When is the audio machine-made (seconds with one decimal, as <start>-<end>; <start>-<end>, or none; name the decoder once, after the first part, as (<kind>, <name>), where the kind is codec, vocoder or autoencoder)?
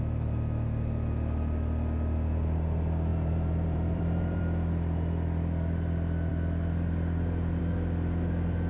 3.1-4.4 (vocoder, BigVGAN v2)